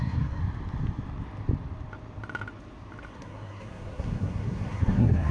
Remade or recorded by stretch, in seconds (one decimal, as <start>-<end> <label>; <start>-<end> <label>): 0.0-0.4 remade; 0.4-3.1 recorded; 3.1-5.3 remade